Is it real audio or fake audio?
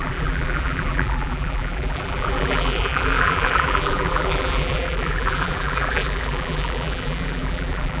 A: fake